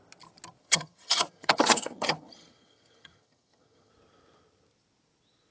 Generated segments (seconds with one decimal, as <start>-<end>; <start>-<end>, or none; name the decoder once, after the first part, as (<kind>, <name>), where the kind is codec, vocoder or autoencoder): 0.6-3.9 (vocoder, HiFi-GAN)